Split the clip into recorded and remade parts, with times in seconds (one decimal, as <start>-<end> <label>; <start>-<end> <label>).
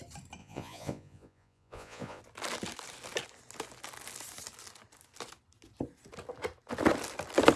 0.0-0.4 recorded; 0.4-2.2 remade; 2.2-7.6 recorded